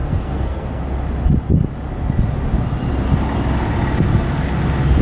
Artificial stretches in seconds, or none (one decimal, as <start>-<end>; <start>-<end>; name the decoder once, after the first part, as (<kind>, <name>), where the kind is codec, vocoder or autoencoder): 0.0-0.8 (codec, SNAC)